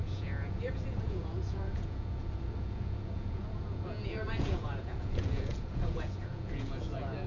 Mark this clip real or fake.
fake